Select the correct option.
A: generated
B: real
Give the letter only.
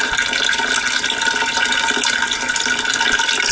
B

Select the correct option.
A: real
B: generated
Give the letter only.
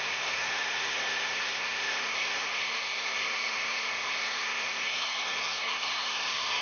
B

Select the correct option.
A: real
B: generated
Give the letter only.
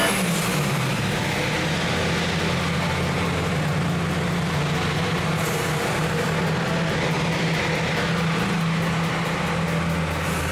A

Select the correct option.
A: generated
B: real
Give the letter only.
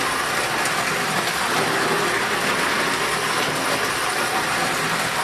B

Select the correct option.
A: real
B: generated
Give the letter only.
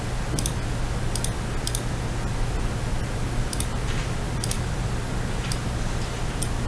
A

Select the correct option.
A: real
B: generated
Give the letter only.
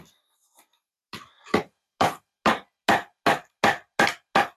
A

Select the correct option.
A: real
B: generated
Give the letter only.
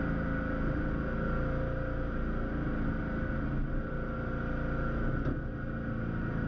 A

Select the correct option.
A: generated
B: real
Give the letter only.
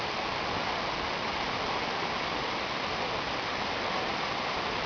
B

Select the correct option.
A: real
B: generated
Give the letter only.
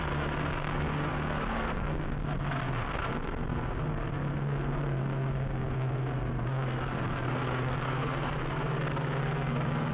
B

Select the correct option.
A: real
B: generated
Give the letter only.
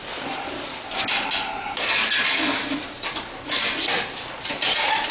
A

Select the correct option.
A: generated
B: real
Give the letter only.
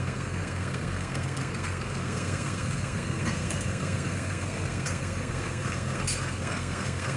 A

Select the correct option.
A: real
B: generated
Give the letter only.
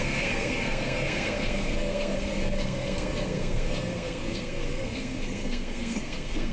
B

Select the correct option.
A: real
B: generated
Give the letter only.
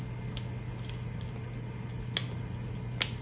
A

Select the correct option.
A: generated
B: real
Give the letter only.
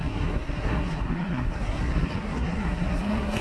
A